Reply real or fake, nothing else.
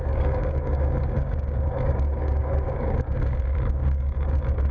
fake